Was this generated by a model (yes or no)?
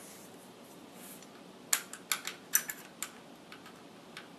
no